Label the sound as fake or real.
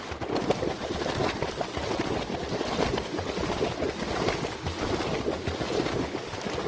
real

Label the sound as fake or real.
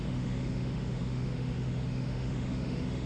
fake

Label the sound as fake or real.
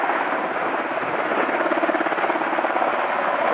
real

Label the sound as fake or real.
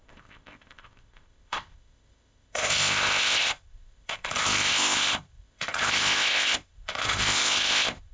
fake